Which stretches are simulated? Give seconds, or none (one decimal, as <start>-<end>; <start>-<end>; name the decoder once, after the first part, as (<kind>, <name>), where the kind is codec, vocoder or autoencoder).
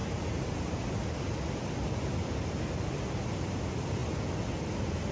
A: none